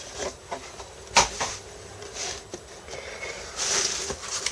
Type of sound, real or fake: real